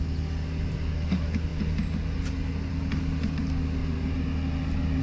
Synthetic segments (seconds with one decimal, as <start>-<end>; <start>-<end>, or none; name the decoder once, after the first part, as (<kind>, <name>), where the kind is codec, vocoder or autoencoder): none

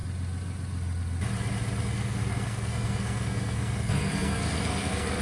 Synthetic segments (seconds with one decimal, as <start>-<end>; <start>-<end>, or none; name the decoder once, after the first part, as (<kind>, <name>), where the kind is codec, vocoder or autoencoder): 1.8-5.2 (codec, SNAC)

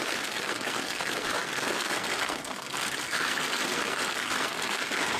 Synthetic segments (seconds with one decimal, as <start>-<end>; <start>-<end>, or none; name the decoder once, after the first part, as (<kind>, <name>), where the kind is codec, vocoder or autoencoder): 0.0-5.2 (codec, SNAC)

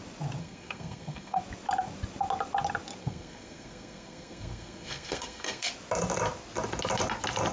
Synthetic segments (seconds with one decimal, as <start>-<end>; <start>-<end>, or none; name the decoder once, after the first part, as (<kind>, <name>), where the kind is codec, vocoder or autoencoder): 0.4-1.4 (codec, SNAC); 3.0-5.7

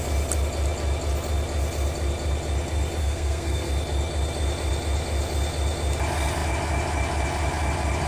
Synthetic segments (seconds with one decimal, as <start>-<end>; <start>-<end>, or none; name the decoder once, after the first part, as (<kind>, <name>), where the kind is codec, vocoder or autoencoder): 3.0-3.7 (codec, SNAC)

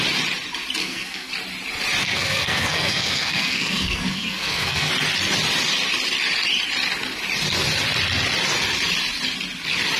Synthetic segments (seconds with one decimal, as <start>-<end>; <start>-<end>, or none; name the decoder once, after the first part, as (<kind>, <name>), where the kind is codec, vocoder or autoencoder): 0.8-1.3 (codec, SNAC); 2.0-4.9

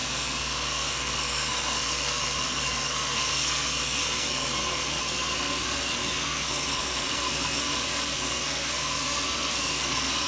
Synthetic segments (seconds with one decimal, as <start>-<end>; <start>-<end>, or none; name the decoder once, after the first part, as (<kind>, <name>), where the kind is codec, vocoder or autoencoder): 0.0-10.3 (codec, SNAC)

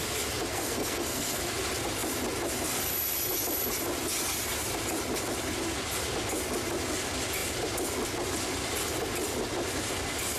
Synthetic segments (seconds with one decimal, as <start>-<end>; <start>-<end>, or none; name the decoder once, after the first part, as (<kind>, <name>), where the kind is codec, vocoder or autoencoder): 0.5-1.4 (codec, SNAC)